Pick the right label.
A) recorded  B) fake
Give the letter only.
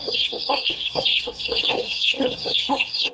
B